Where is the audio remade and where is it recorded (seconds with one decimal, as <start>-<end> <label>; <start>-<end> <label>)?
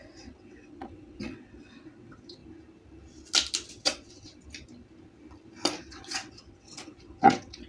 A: 0.0-2.4 remade; 2.4-3.7 recorded; 3.7-4.3 remade; 4.3-5.9 recorded; 5.9-7.7 remade